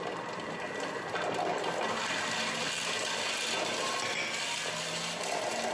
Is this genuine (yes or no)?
yes